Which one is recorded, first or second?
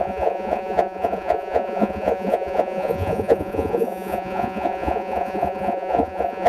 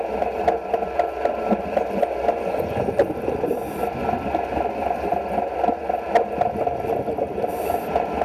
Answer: second